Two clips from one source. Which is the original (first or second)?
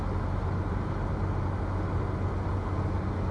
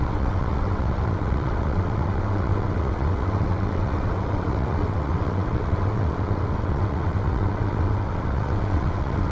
first